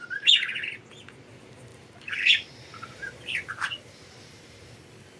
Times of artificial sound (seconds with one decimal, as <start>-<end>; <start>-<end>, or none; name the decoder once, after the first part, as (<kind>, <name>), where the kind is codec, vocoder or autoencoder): 1.7-4.8 (vocoder, BigVGAN v2)